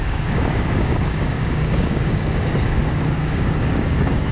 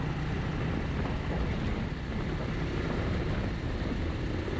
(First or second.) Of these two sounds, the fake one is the first